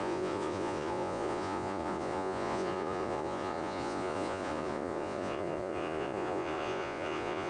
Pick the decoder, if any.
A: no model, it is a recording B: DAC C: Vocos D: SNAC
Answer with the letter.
C